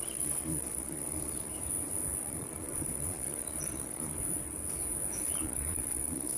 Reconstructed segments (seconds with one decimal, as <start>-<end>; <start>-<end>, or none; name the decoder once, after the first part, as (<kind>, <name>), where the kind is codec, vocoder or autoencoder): 0.0-1.5 (vocoder, Vocos); 2.2-4.2; 5.2-6.4

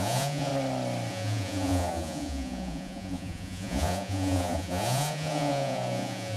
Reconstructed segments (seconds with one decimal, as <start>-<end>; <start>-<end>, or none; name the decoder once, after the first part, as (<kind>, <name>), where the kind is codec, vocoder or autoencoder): 0.0-0.5 (vocoder, Vocos); 1.1-6.4

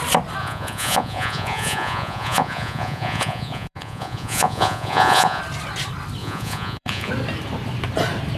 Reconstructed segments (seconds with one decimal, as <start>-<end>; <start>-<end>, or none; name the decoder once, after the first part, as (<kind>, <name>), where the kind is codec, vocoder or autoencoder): 0.4-5.4 (vocoder, Vocos); 6.2-7.1